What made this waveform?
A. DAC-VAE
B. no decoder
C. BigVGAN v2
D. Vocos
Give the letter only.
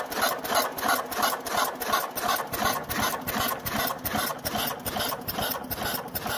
B